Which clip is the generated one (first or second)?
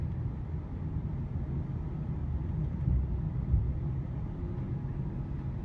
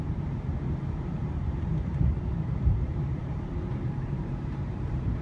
second